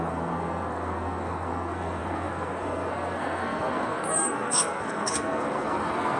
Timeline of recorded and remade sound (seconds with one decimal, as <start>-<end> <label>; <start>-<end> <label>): 0.0-6.2 remade